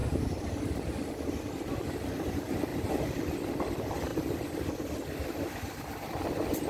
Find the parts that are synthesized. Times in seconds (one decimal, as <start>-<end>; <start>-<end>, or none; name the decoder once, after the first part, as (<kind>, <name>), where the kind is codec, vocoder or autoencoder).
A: 0.0-0.6 (vocoder, BigVGAN v2); 2.7-3.2; 4.1-4.7